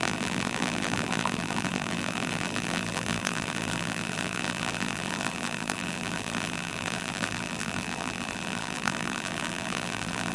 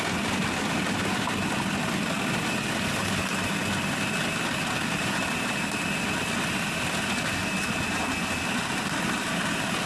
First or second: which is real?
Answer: second